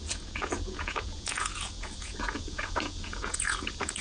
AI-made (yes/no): yes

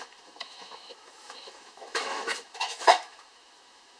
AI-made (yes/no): yes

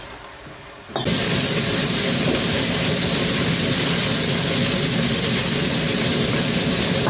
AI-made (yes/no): no